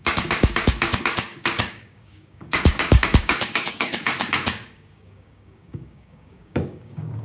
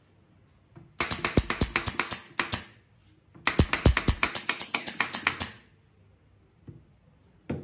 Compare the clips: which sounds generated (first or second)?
first